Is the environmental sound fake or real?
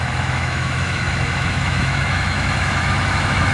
fake